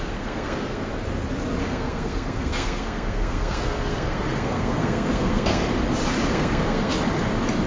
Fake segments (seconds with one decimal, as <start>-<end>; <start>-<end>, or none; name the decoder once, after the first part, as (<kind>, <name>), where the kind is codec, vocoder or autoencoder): 0.0-0.9 (codec, SNAC); 1.6-5.6; 6.3-6.9